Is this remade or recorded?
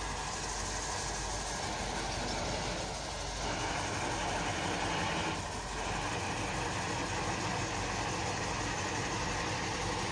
recorded